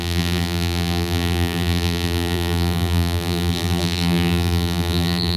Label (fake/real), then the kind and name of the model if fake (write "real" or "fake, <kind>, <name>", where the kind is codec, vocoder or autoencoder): fake, vocoder, BigVGAN v2